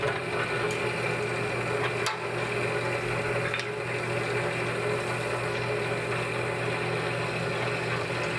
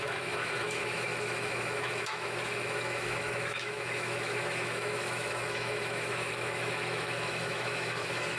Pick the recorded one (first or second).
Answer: first